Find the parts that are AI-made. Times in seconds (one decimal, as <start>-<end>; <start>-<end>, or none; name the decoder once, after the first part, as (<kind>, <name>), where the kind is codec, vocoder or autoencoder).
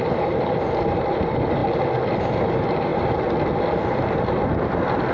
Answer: 0.0-1.6 (vocoder, BigVGAN v2); 2.2-2.9